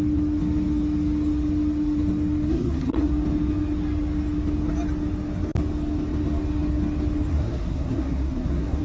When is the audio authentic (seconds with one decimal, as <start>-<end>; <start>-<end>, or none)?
0.0-2.5; 3.1-7.3